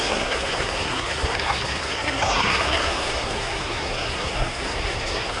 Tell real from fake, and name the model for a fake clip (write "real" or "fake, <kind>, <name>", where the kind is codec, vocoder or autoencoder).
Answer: fake, codec, SNAC